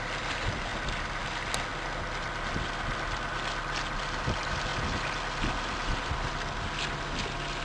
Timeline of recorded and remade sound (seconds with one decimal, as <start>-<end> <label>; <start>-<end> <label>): 0.0-7.6 recorded